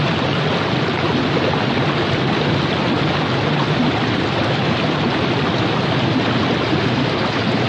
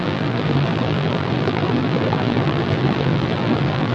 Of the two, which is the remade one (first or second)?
second